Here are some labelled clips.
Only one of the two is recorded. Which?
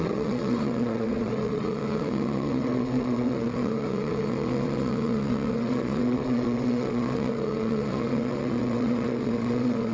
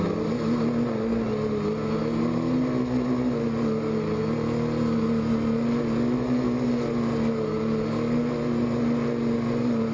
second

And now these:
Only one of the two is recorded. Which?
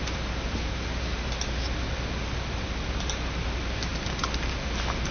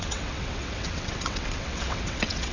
first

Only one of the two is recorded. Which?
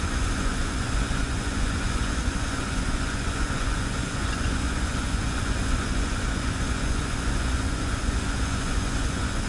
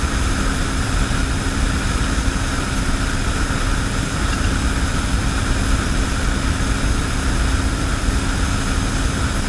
second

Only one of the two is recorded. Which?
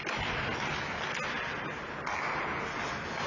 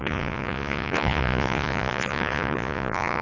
first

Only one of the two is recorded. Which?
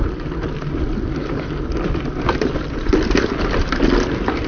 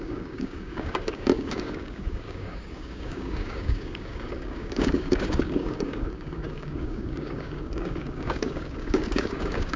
first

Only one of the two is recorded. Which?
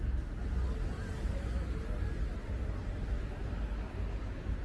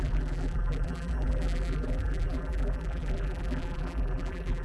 first